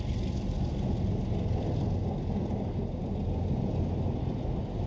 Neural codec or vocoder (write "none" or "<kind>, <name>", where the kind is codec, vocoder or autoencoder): none